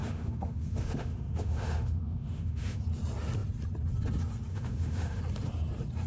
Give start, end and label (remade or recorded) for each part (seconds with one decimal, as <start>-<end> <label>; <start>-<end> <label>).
0.0-2.8 remade; 2.8-4.5 recorded; 4.5-5.2 remade; 5.2-6.1 recorded